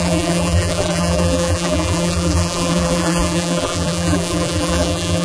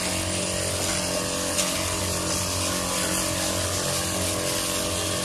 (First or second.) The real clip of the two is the second